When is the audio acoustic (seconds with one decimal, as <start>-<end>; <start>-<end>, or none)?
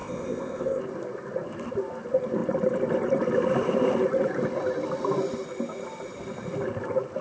0.8-7.2